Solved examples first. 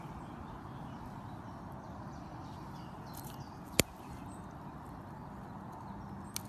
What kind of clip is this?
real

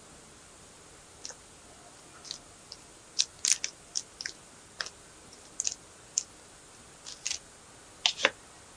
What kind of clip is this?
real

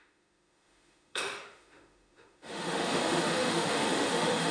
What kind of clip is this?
fake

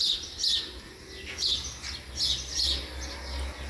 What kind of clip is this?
real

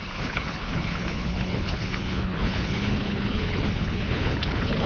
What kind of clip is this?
fake